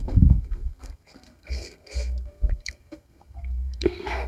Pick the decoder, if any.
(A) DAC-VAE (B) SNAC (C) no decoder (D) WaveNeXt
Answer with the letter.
B